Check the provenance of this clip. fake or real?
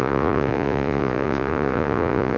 fake